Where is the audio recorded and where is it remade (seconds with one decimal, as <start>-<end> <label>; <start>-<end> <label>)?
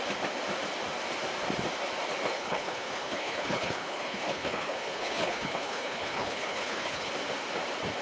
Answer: 0.0-2.3 recorded; 2.3-7.1 remade; 7.1-8.0 recorded